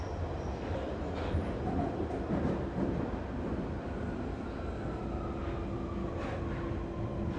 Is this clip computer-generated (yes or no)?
no